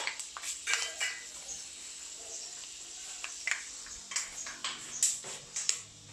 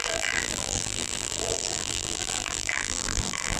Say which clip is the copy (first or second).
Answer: second